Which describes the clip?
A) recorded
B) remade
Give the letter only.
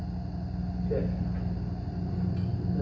A